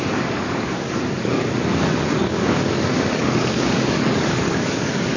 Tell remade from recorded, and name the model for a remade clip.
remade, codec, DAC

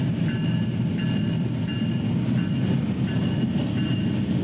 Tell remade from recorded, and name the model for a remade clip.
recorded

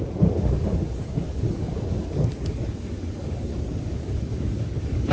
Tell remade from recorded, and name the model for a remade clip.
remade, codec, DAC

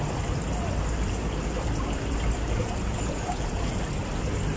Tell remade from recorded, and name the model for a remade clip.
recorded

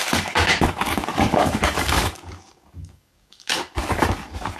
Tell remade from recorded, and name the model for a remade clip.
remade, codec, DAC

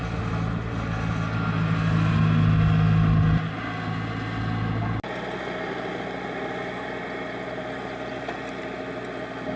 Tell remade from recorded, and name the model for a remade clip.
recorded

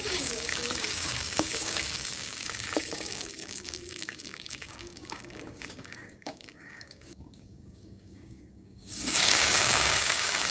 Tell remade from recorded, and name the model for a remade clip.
remade, codec, DAC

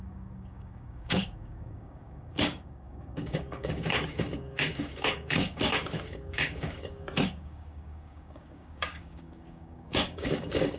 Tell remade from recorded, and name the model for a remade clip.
remade, codec, DAC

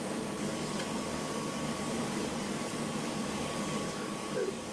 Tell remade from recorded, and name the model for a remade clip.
remade, codec, DAC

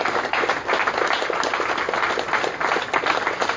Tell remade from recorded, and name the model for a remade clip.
recorded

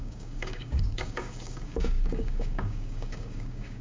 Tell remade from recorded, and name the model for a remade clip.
remade, codec, DAC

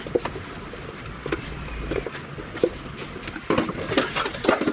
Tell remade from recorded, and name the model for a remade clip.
recorded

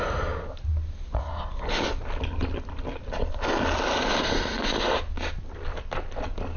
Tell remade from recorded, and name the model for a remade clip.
recorded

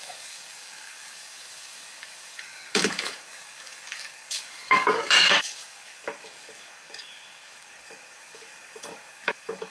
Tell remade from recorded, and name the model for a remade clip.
remade, codec, DAC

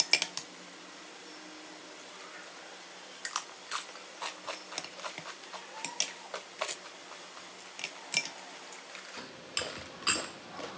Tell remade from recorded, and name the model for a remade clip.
recorded